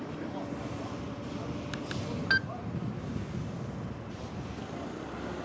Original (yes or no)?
yes